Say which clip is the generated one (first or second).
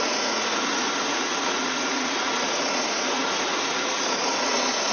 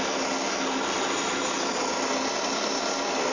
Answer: first